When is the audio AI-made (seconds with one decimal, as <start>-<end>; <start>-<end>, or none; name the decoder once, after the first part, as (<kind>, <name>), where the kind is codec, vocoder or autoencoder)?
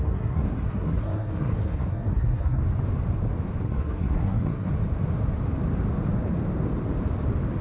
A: 0.0-2.6 (codec, SNAC); 3.6-4.7